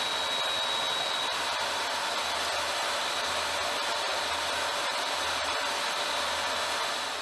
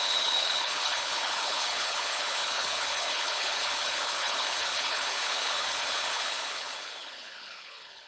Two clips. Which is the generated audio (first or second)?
second